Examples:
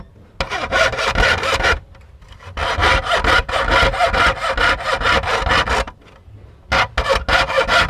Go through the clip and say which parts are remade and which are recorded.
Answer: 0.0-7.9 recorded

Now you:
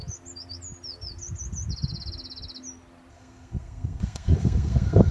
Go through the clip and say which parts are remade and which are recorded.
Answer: 0.0-3.1 recorded; 3.1-5.1 remade